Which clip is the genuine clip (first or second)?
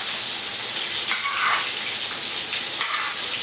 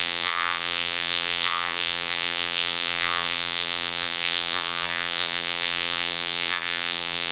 first